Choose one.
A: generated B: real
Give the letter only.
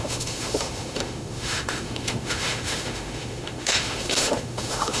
A